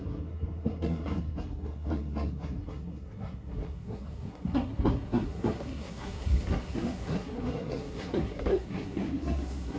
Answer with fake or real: fake